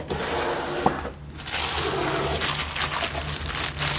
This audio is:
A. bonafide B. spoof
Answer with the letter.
A